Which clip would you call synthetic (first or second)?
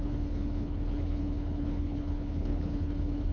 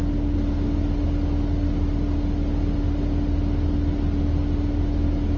first